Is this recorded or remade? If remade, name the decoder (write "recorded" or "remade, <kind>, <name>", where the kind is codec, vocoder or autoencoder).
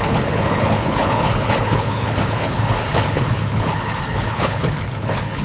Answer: remade, codec, HILCodec